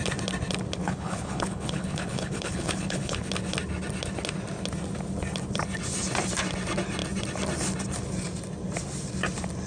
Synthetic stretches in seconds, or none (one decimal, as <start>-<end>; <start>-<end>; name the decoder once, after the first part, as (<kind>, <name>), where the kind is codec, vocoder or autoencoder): 0.8-3.3 (codec, HILCodec)